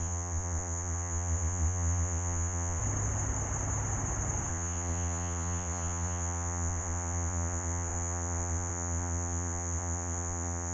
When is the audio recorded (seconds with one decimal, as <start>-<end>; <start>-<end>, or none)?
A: 2.8-4.5